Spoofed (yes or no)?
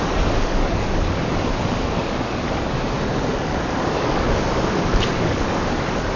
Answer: yes